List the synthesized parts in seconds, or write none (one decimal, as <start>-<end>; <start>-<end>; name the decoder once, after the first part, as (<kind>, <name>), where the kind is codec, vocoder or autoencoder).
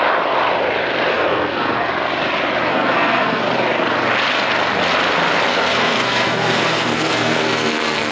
1.1-1.9 (codec, SNAC); 2.7-3.4; 5.5-8.1